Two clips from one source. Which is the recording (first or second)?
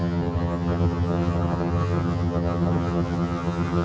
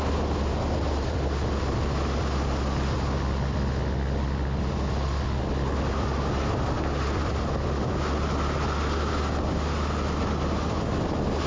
second